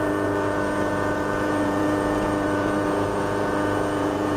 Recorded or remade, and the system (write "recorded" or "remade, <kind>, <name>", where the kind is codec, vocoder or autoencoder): remade, vocoder, Vocos